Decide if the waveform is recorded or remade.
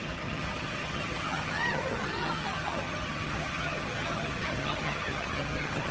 remade